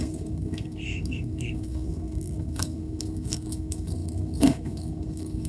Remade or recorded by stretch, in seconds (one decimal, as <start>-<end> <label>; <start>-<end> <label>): 0.0-5.5 remade

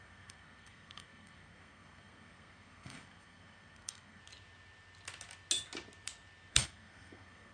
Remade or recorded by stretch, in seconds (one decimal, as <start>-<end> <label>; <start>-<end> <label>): 0.0-4.2 remade; 4.2-6.5 recorded; 6.5-7.5 remade

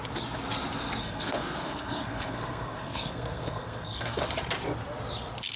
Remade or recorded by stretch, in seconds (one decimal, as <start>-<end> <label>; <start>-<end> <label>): 0.0-1.0 recorded; 1.0-4.2 remade; 4.2-5.6 recorded

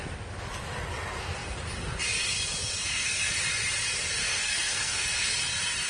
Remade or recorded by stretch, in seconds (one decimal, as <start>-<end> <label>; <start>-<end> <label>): 0.0-2.8 recorded; 2.8-3.3 remade; 3.3-4.2 recorded; 4.2-5.5 remade; 5.5-5.9 recorded

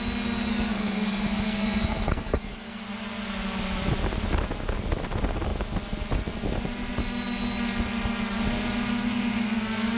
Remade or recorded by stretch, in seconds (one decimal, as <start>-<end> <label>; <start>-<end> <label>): 0.0-0.5 recorded; 0.5-2.8 remade; 2.8-10.0 recorded